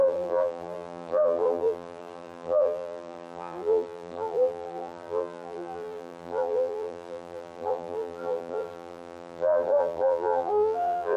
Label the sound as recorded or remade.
remade